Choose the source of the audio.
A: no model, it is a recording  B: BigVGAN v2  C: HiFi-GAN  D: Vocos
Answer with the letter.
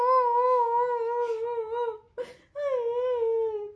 A